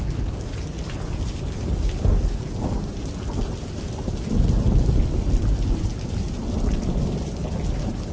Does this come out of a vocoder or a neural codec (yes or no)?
no